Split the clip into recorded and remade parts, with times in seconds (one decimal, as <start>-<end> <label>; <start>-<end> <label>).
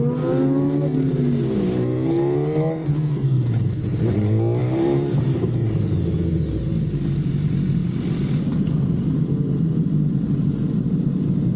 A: 0.0-4.6 recorded; 4.6-6.2 remade; 6.2-7.8 recorded; 7.8-9.2 remade; 9.2-11.6 recorded